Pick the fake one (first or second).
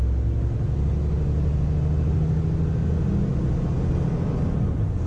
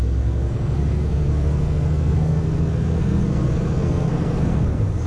second